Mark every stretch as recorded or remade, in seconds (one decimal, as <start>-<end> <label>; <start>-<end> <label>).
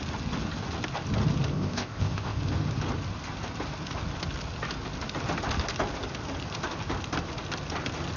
0.0-1.5 recorded; 1.5-2.4 remade; 2.4-8.2 recorded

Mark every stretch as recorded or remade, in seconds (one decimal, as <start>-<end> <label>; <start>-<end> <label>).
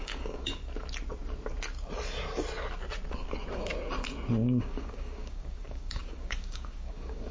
0.0-0.6 remade; 0.6-4.6 recorded; 4.6-7.3 remade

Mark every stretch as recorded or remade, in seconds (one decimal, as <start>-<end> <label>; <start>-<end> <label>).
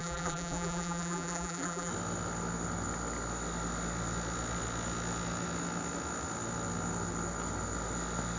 0.0-1.9 remade; 1.9-8.4 recorded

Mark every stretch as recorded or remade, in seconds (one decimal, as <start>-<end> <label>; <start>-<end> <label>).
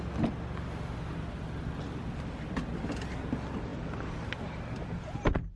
0.0-5.6 recorded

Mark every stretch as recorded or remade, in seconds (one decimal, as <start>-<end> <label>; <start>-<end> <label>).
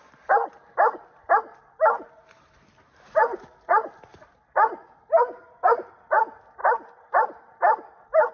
0.0-4.1 recorded; 4.1-4.8 remade; 4.8-6.6 recorded; 6.6-8.3 remade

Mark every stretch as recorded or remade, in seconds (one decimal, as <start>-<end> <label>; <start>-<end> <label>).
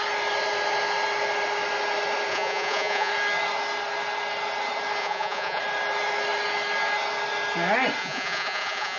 0.0-2.3 recorded; 2.3-3.1 remade; 3.1-5.0 recorded; 5.0-5.6 remade; 5.6-8.0 recorded; 8.0-9.0 remade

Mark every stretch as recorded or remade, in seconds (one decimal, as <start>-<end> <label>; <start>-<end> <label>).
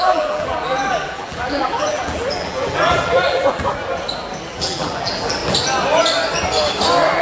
0.0-3.6 remade; 3.6-4.5 recorded; 4.5-5.4 remade; 5.4-7.2 recorded